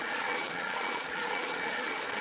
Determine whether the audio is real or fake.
fake